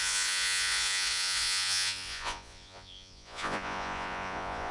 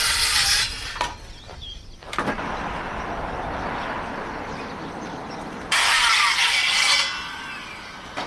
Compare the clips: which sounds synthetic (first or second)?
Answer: first